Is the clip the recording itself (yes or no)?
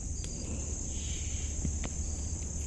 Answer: yes